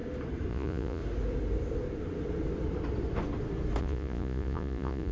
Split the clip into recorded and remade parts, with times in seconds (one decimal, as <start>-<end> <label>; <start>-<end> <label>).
0.0-0.5 recorded; 0.5-1.0 remade; 1.0-3.8 recorded; 3.8-5.1 remade